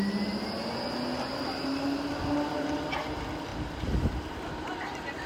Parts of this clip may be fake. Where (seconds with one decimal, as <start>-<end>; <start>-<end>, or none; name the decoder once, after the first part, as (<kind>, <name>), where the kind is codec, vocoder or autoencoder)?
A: none